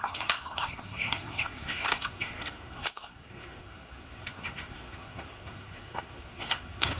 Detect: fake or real fake